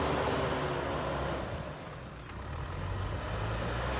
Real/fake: real